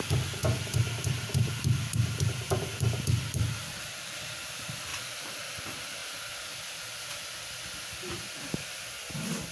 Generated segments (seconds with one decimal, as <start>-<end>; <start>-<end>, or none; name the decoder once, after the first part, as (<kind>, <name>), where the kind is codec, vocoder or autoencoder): 0.0-6.0 (vocoder, BigVGAN v2); 9.1-9.5